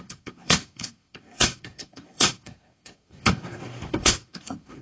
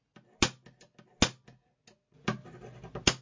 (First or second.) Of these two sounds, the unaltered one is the second